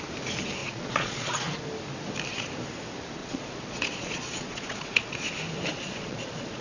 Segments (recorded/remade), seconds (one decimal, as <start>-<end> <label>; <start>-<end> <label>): 0.0-0.6 recorded; 0.6-1.6 remade; 1.6-3.2 recorded; 3.2-5.3 remade; 5.3-5.7 recorded; 5.7-6.6 remade